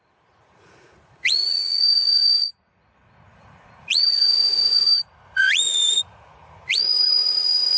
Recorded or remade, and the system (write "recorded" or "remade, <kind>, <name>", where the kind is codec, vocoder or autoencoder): remade, vocoder, Vocos